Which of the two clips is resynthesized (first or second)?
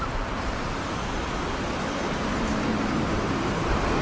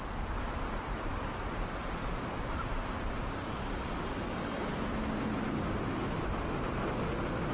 first